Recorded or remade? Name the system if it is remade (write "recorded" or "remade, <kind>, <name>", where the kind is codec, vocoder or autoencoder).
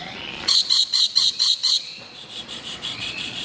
remade, vocoder, Vocos